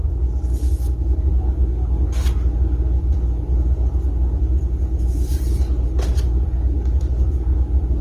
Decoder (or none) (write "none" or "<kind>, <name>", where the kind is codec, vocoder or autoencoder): none